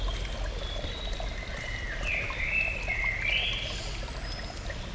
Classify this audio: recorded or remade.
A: recorded